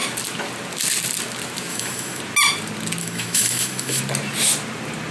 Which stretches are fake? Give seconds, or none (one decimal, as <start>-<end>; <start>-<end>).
1.7-2.2; 3.0-4.0